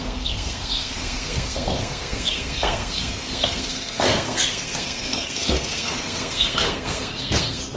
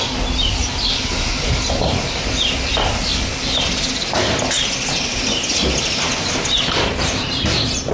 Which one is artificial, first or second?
first